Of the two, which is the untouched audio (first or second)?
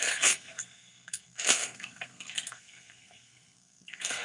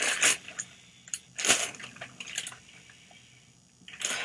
second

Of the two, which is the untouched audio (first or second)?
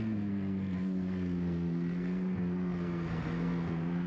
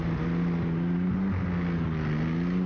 second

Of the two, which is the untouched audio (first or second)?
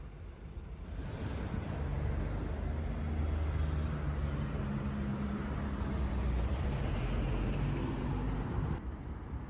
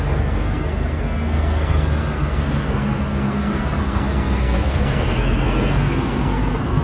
first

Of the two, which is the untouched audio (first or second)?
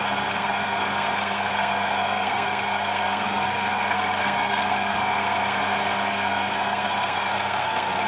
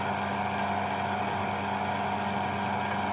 second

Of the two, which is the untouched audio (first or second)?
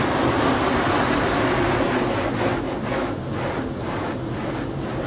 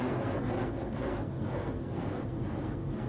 first